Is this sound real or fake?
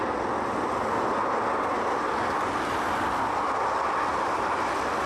real